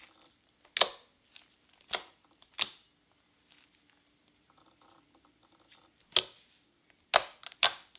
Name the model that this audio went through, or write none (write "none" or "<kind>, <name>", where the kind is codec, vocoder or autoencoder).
none